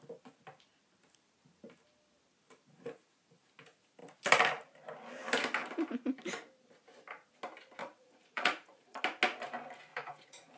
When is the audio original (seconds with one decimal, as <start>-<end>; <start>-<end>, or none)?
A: 0.0-7.8; 9.0-9.9